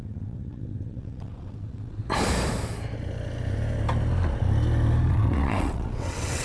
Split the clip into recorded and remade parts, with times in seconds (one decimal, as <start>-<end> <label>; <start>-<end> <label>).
0.0-2.0 remade; 2.0-5.1 recorded; 5.1-6.4 remade